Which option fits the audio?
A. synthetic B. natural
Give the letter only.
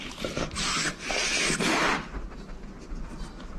B